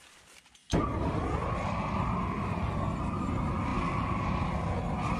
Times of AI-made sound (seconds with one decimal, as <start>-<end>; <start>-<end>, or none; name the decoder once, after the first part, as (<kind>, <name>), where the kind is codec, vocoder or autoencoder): none